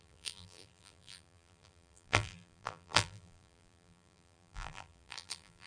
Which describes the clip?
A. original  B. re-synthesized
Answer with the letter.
B